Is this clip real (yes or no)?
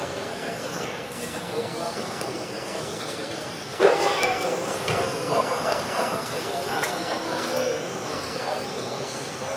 no